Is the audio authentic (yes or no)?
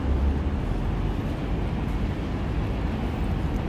yes